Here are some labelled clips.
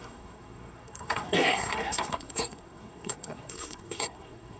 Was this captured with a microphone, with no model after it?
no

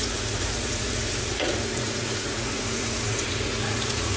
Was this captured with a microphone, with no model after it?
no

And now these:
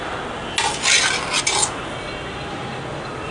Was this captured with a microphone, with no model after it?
yes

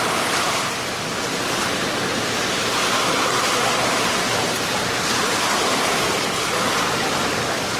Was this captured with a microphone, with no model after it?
yes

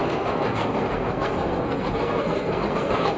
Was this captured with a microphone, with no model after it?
no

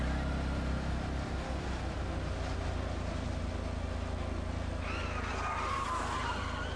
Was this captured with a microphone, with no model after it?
yes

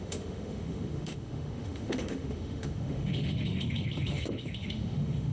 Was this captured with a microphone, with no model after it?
no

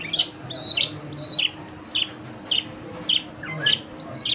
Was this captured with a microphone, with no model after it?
yes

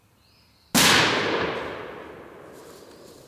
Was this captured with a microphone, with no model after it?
yes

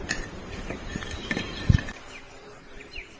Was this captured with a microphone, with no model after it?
no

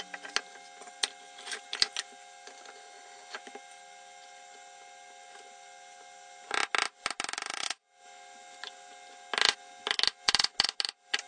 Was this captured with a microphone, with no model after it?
yes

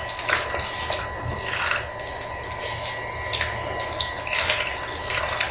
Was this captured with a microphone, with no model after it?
yes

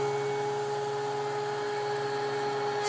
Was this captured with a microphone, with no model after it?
yes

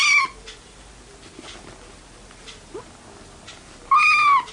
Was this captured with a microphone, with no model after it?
yes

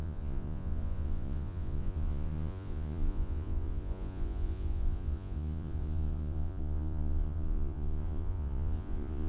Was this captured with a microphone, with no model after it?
no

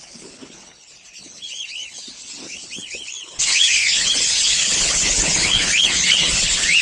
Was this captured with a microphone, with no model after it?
no